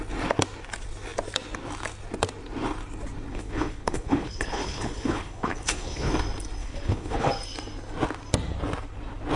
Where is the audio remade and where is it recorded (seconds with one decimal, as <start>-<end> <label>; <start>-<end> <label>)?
0.0-3.3 recorded; 3.3-6.1 remade; 6.1-6.6 recorded; 6.6-7.3 remade; 7.3-9.4 recorded